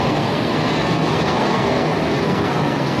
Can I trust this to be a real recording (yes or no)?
no